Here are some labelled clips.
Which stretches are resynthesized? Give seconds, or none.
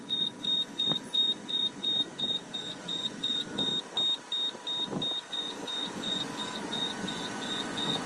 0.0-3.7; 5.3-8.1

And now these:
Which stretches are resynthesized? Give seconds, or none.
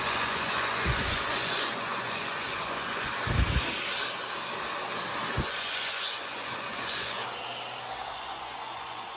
0.0-3.1; 5.4-7.2; 8.1-9.2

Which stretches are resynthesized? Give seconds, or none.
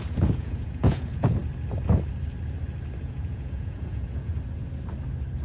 0.0-1.4; 3.0-4.3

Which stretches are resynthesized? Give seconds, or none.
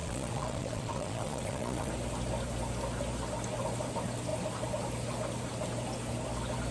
0.0-1.9